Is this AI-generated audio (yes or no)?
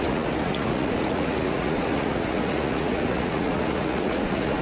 yes